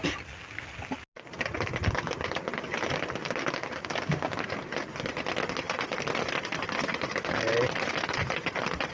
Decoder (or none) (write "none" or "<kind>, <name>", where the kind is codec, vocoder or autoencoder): none